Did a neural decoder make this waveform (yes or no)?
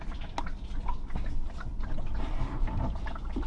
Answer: no